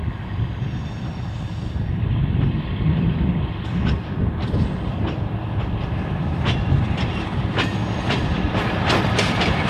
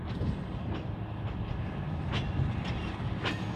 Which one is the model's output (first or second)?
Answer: first